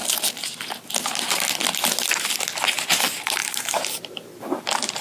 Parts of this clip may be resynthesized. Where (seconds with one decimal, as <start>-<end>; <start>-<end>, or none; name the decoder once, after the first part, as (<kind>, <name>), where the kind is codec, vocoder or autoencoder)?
3.4-4.0 (vocoder, BigVGAN v2)